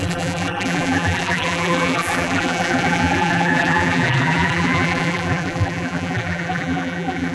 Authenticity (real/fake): fake